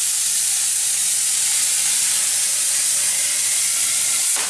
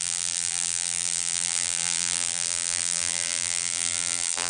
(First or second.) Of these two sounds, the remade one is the second